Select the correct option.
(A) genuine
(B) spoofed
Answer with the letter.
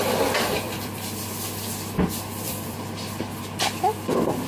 B